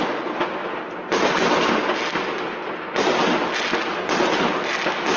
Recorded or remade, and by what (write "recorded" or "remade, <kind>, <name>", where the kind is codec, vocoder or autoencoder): recorded